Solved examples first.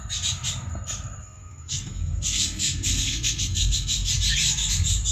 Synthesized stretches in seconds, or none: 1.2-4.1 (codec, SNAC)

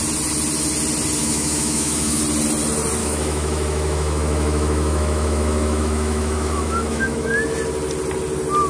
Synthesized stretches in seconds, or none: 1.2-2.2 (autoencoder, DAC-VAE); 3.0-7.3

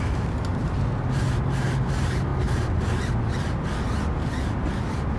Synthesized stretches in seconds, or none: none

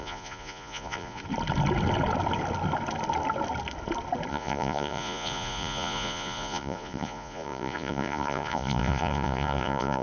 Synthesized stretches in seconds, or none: 0.0-1.2 (vocoder, Vocos); 4.3-10.0

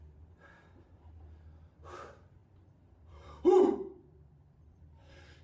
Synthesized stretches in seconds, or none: 2.4-5.4 (vocoder, BigVGAN v2)

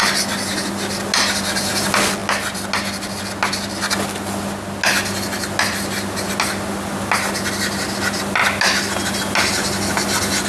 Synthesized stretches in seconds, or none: none

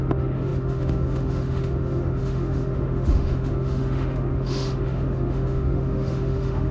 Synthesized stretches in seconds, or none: 0.0-6.7 (autoencoder, DAC-VAE)

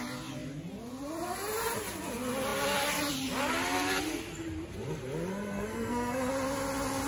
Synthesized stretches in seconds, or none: 5.3-6.3 (codec, SNAC)